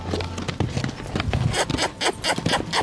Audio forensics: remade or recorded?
recorded